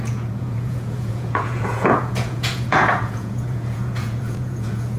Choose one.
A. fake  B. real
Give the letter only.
A